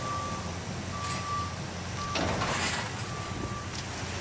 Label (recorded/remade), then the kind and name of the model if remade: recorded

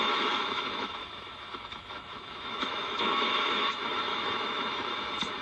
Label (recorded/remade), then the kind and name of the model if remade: remade, autoencoder, DAC-VAE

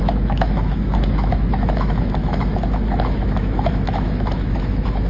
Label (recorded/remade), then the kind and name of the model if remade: remade, autoencoder, DAC-VAE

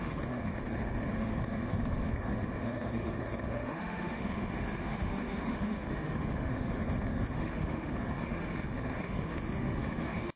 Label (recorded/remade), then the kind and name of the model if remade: remade, autoencoder, DAC-VAE